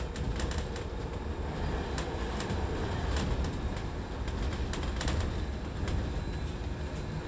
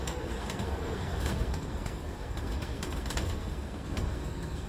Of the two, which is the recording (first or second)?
first